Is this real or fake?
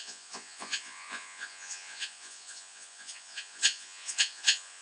fake